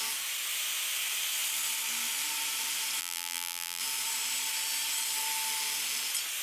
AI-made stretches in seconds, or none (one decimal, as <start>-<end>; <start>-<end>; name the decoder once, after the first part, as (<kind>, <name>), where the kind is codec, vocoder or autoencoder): 3.0-3.8 (vocoder, BigVGAN v2)